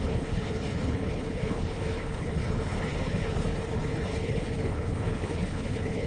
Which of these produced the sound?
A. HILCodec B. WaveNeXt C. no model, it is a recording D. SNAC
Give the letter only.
A